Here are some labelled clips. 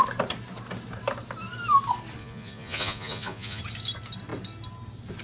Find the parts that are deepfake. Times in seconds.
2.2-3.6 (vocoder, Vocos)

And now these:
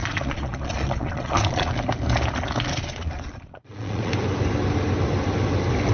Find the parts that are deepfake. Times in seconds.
0.0-1.7 (vocoder, Vocos); 2.7-4.1

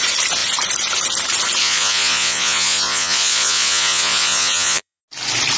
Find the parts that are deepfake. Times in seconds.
1.6-5.0 (vocoder, Vocos)